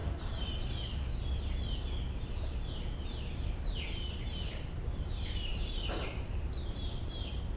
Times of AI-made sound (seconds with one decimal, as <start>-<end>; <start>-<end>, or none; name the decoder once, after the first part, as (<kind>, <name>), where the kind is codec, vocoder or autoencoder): 4.6-7.6 (vocoder, BigVGAN v2)